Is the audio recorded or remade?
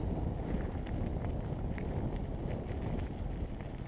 recorded